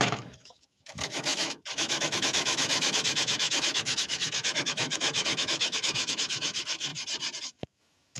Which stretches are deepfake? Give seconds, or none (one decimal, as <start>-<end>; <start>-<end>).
0.0-6.9; 7.4-8.2